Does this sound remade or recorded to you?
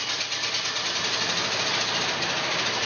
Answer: recorded